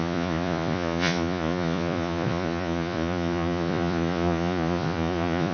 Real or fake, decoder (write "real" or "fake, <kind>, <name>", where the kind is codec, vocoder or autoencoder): fake, vocoder, Vocos